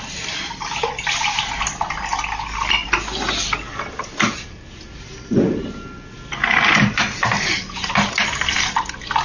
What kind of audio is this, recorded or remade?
recorded